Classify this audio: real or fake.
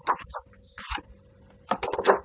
real